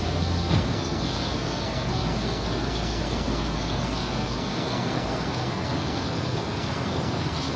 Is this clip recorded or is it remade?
remade